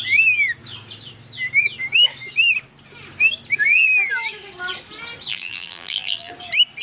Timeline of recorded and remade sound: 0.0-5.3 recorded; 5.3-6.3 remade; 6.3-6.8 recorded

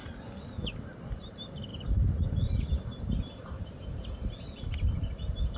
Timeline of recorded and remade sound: 0.0-1.7 recorded; 1.7-4.3 remade; 4.3-5.6 recorded

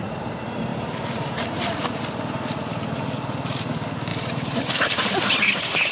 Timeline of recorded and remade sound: 0.0-0.7 recorded; 0.7-2.0 remade; 2.0-4.1 recorded; 4.1-4.7 remade; 4.7-5.9 recorded

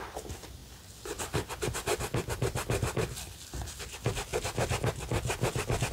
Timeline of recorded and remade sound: 0.0-5.9 recorded

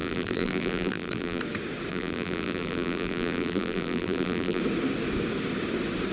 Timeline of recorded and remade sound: 0.0-1.4 remade; 1.4-1.9 recorded; 1.9-4.6 remade; 4.6-6.1 recorded